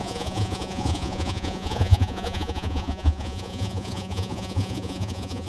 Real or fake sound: fake